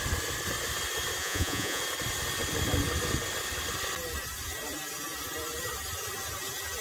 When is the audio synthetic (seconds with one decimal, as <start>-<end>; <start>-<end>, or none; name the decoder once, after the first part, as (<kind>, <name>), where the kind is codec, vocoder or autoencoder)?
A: 1.2-1.8 (vocoder, Vocos)